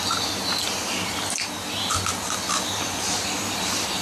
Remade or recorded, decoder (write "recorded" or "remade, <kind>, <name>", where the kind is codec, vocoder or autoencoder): recorded